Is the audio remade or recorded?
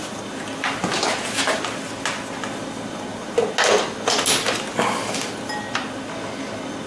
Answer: recorded